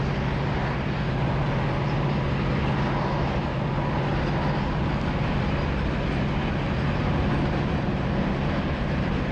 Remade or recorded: recorded